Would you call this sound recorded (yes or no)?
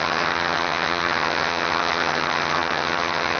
no